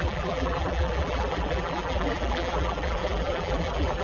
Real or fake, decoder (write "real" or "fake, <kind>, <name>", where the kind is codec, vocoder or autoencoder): fake, vocoder, BigVGAN v2